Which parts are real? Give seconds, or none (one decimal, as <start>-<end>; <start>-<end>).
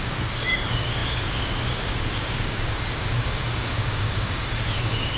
none